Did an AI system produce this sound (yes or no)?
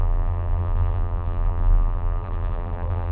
yes